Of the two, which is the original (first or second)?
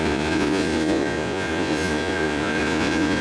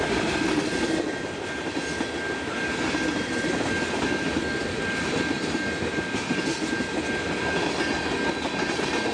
second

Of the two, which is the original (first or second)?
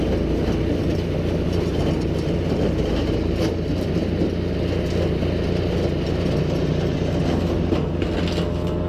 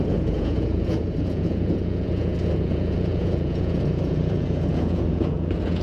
first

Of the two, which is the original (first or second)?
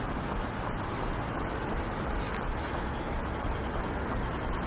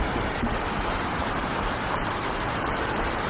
first